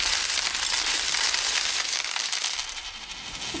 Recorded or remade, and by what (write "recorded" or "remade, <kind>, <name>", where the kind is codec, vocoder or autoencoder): remade, vocoder, BigVGAN v2